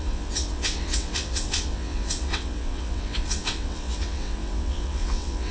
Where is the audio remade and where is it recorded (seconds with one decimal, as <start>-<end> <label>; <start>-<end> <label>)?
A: 0.0-5.5 remade